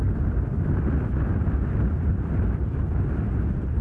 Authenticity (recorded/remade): recorded